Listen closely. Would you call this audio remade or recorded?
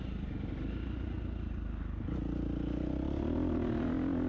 recorded